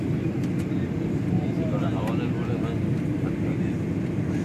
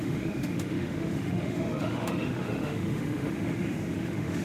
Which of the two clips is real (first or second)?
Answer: first